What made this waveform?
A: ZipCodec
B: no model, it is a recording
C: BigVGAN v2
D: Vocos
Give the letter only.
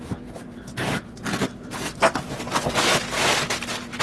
B